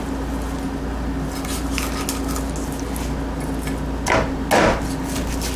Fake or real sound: real